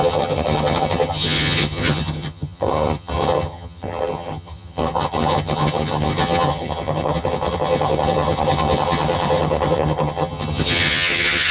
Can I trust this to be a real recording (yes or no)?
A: no